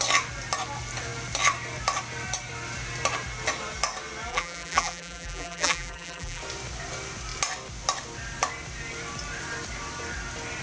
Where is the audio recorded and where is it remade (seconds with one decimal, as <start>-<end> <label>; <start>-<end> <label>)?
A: 0.0-4.3 recorded; 4.3-6.4 remade; 6.4-10.6 recorded